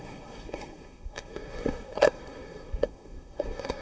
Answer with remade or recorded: remade